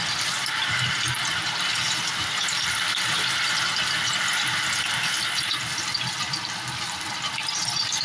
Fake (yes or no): yes